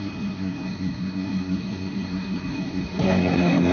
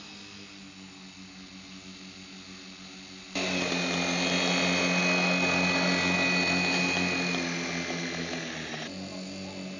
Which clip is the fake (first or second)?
first